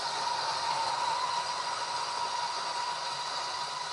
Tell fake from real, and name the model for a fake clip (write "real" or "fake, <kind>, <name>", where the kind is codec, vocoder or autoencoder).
fake, vocoder, Vocos